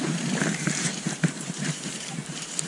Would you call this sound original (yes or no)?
no